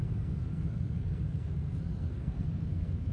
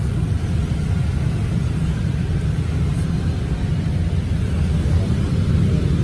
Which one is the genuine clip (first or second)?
second